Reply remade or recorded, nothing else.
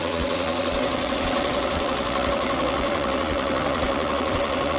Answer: remade